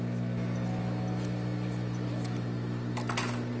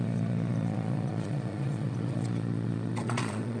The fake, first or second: second